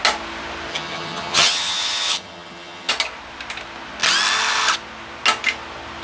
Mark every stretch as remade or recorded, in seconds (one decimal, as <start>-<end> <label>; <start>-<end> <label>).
0.0-0.7 recorded; 0.7-2.9 remade; 2.9-6.0 recorded

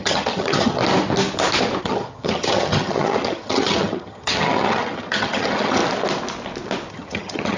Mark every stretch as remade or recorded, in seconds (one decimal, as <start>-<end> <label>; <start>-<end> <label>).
0.0-0.8 remade; 0.8-1.8 recorded; 1.8-5.8 remade; 5.8-6.9 recorded; 6.9-7.6 remade

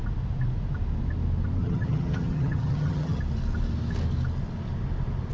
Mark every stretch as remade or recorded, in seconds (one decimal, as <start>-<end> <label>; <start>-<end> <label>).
0.0-1.6 recorded; 1.6-3.2 remade; 3.2-5.3 recorded

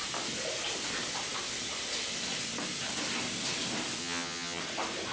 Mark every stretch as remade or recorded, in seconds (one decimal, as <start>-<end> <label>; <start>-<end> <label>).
0.0-4.0 recorded; 4.0-4.6 remade; 4.6-5.1 recorded

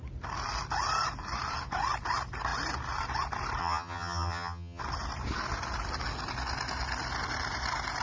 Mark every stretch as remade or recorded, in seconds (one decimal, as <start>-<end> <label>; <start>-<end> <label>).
0.0-3.6 recorded; 3.6-4.8 remade; 4.8-8.0 recorded

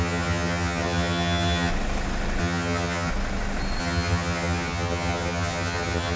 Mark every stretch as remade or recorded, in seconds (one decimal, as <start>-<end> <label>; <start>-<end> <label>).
0.0-1.7 remade; 1.7-2.4 recorded; 2.4-3.1 remade; 3.1-3.8 recorded; 3.8-6.2 remade